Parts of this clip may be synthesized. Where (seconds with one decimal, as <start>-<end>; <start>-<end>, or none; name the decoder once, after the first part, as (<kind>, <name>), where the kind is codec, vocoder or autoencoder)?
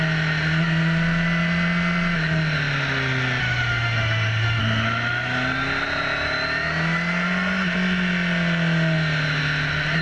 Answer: 3.4-4.6 (autoencoder, DAC-VAE)